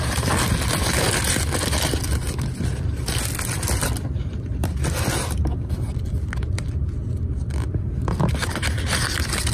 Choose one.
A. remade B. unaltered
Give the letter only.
B